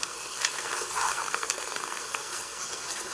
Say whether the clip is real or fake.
fake